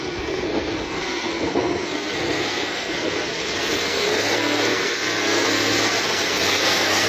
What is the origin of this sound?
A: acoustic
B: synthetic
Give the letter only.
B